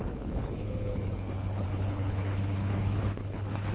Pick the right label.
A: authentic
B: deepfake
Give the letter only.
B